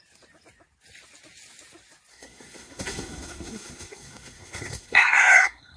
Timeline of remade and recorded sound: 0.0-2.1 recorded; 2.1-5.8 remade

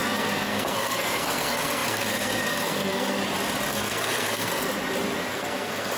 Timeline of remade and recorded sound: 0.0-3.2 remade; 3.2-3.7 recorded; 3.7-4.7 remade; 4.7-5.3 recorded; 5.3-6.0 remade

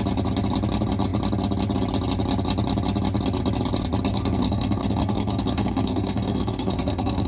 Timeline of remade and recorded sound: 0.0-4.1 recorded; 4.1-7.3 remade

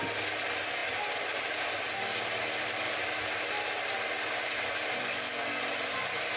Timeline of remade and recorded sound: 0.0-5.0 recorded; 5.0-5.6 remade; 5.6-6.4 recorded

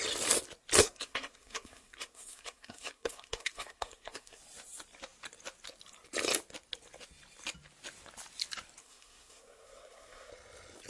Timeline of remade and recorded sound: 0.0-0.8 recorded; 0.8-4.4 remade; 4.4-8.8 recorded; 8.8-10.3 remade; 10.3-10.9 recorded

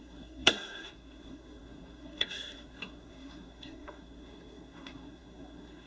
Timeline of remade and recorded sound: 0.0-5.9 remade

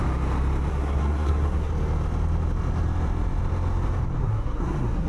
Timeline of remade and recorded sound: 0.0-0.7 recorded; 0.7-1.7 remade; 1.7-4.2 recorded; 4.2-5.1 remade

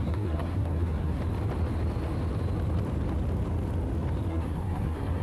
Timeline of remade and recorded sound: 0.0-1.2 remade; 1.2-4.3 recorded; 4.3-5.2 remade